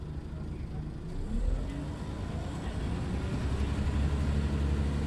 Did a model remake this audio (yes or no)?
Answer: no